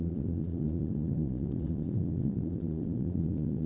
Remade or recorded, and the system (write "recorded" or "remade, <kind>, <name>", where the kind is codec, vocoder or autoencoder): remade, vocoder, Vocos